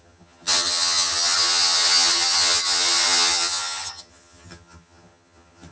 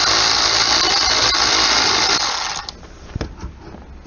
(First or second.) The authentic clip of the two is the second